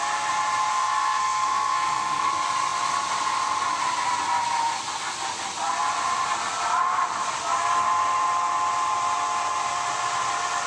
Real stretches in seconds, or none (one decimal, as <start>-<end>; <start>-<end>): 0.0-0.7; 2.3-10.7